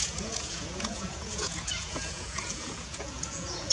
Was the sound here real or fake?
fake